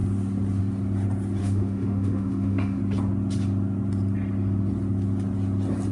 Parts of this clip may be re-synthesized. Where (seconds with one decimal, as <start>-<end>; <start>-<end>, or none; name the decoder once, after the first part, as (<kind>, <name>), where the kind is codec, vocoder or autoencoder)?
1.4-2.8 (autoencoder, DAC-VAE)